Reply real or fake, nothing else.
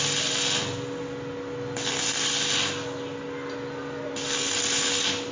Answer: real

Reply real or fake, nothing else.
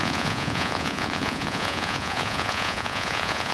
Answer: fake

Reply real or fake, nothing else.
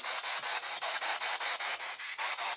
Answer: fake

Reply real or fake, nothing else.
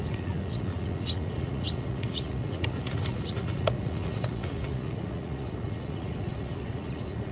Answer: fake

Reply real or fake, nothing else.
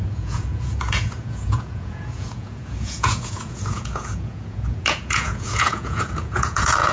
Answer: fake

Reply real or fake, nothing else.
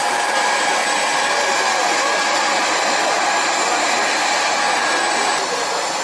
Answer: real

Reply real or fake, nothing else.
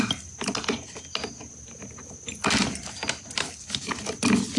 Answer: real